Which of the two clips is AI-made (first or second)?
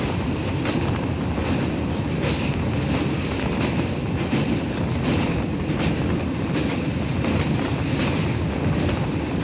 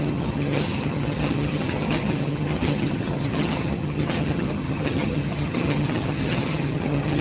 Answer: second